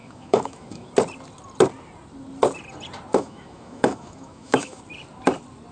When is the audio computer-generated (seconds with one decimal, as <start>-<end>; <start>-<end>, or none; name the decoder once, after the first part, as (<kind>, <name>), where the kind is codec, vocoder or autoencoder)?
0.0-0.9 (autoencoder, DAC-VAE); 3.1-4.8